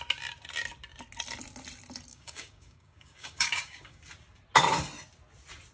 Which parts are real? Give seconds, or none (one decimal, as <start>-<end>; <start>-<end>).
0.0-2.1; 4.0-5.7

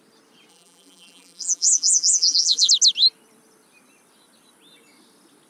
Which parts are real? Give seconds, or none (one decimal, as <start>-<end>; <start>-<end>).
0.0-0.5; 2.7-5.5

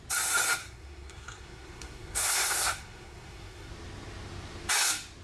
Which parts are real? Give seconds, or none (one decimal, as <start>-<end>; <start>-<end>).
0.0-0.6; 3.7-5.2

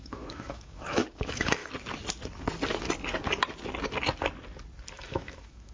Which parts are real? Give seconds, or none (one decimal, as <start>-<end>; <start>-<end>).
1.6-4.9

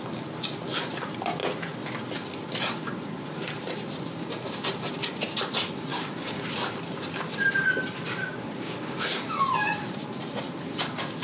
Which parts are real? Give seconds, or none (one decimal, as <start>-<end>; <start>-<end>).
0.0-5.9; 6.4-8.2; 9.3-11.2

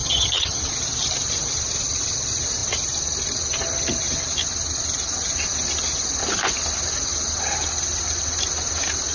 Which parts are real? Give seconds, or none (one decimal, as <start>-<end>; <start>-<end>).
0.6-9.1